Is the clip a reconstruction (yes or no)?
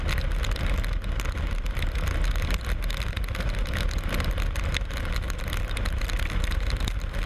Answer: no